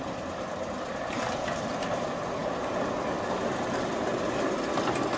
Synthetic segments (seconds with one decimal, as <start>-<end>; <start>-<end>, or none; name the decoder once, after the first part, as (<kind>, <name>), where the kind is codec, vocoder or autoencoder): none